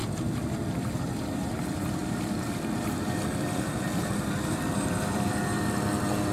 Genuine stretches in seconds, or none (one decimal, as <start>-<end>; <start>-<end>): 1.6-2.0; 5.3-6.3